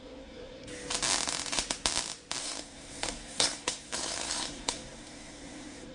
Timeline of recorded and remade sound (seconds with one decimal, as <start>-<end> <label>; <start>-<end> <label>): 0.0-0.7 remade; 0.7-2.4 recorded; 2.4-5.9 remade